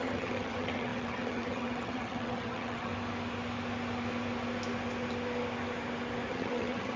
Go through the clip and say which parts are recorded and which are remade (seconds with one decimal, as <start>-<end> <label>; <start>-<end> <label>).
0.0-2.9 remade; 2.9-6.3 recorded; 6.3-7.0 remade